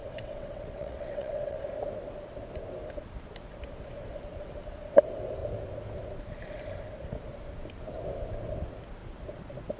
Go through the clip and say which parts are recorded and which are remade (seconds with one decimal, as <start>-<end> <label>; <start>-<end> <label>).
0.0-1.6 remade; 1.6-9.8 recorded